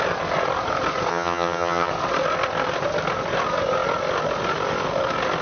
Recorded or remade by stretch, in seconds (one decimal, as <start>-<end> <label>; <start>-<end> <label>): 0.0-1.1 recorded; 1.1-1.9 remade; 1.9-5.4 recorded